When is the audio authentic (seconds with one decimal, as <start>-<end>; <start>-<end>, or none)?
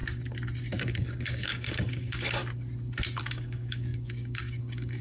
0.0-0.8; 2.4-3.2